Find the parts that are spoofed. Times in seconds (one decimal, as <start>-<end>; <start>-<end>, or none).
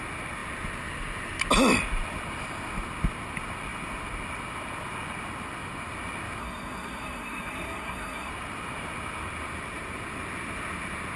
6.4-8.3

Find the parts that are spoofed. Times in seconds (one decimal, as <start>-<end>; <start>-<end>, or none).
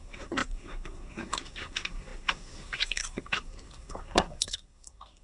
0.0-5.2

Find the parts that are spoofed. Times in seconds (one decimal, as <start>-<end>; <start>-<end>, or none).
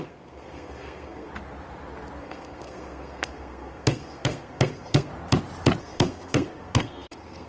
0.0-1.3; 2.2-5.1; 5.8-7.5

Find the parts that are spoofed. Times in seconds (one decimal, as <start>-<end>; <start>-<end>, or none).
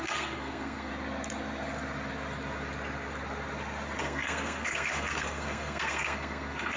0.0-0.9; 4.0-6.8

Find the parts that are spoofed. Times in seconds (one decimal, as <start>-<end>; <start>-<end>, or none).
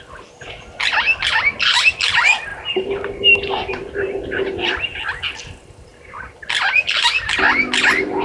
none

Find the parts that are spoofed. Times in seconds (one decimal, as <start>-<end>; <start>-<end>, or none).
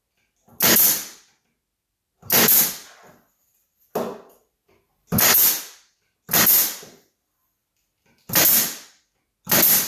none